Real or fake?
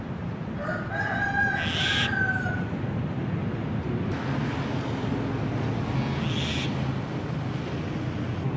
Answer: real